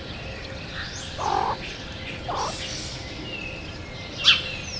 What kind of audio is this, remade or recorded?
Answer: recorded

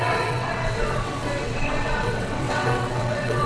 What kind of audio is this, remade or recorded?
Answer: remade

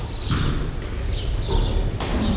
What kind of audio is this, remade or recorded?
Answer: recorded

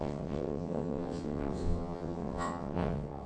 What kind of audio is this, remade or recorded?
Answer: remade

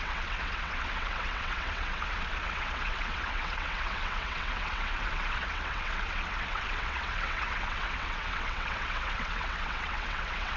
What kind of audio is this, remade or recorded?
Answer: remade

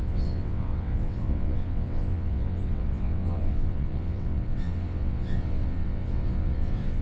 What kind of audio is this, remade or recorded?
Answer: remade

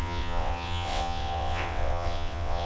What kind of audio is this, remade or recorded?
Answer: remade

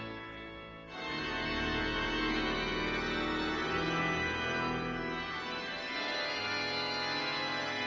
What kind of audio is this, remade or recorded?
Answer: recorded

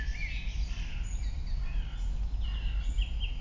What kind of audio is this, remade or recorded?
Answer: recorded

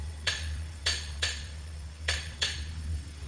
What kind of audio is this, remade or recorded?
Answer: remade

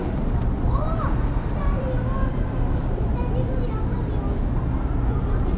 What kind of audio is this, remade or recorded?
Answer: recorded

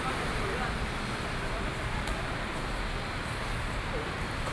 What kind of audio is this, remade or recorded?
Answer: recorded